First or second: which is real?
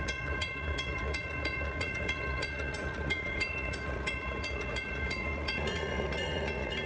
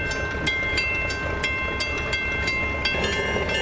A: second